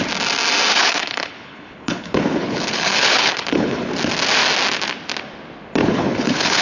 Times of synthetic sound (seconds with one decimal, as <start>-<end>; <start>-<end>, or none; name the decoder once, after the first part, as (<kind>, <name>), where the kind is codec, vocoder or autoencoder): 0.7-3.9 (codec, HILCodec); 5.8-6.6